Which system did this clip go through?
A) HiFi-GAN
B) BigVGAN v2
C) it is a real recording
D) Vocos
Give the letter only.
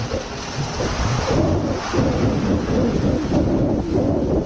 C